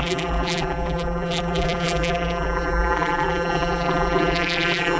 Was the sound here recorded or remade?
remade